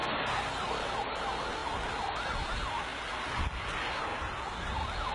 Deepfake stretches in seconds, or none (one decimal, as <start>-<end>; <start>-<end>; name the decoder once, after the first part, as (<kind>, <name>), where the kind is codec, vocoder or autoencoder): none